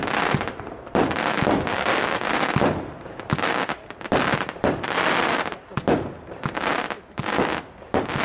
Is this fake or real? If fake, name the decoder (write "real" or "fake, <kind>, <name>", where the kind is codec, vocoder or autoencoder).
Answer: real